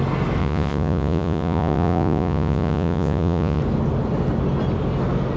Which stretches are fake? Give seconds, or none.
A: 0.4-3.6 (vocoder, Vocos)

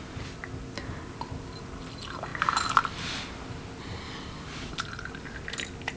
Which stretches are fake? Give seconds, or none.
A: none

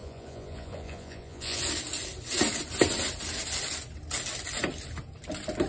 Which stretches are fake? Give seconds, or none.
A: 0.0-1.6 (vocoder, Vocos)

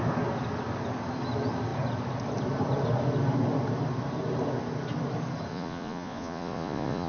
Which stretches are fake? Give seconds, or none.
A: 5.5-7.1 (vocoder, Vocos)

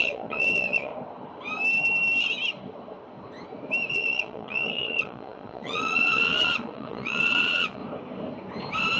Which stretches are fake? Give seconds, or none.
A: 0.0-0.9 (vocoder, Vocos); 3.9-7.8